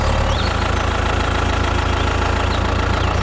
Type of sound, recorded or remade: recorded